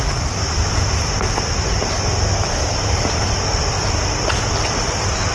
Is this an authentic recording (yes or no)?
yes